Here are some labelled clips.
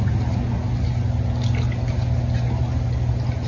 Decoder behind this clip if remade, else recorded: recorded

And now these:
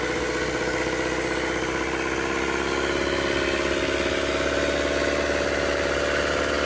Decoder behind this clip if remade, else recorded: recorded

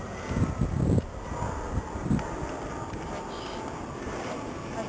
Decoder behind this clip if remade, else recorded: recorded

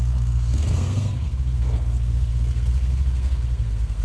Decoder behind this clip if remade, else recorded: remade, codec, SNAC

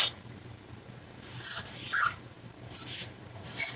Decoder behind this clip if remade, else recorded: remade, vocoder, BigVGAN v2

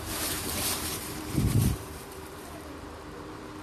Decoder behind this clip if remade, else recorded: remade, vocoder, BigVGAN v2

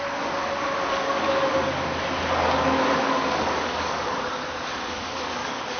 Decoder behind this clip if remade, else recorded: remade, codec, DAC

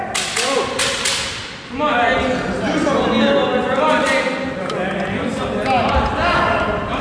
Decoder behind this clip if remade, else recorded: recorded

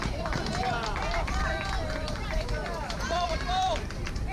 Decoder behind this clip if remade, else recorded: remade, vocoder, BigVGAN v2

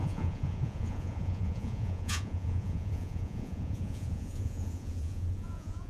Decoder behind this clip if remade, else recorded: remade, vocoder, Vocos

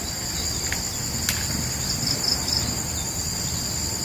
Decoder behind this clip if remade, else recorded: recorded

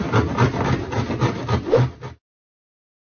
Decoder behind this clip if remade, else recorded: recorded